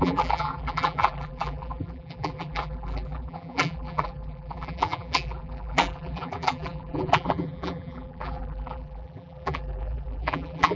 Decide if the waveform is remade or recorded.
remade